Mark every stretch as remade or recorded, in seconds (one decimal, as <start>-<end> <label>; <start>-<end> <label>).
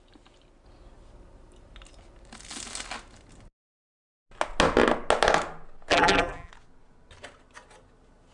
0.0-5.9 recorded; 5.9-6.5 remade; 6.5-8.3 recorded